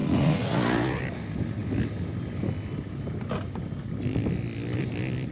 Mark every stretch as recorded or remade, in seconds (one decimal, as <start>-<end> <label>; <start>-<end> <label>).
0.0-1.0 remade; 1.0-5.3 recorded